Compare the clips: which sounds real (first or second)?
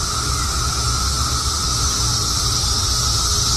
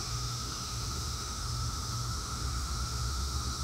first